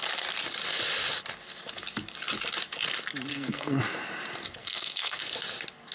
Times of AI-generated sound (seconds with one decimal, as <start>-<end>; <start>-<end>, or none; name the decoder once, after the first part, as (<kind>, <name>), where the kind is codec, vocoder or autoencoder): 3.3-3.8 (codec, SNAC); 4.6-5.2